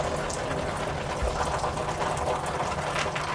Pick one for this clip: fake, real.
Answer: real